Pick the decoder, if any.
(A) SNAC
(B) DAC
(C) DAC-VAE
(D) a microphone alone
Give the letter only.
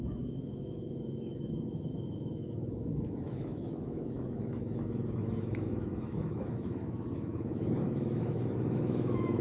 C